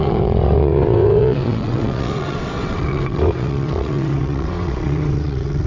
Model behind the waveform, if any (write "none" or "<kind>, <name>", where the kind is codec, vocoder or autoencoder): vocoder, WaveNeXt